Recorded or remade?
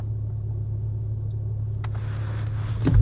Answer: recorded